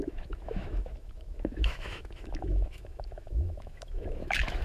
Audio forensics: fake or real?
fake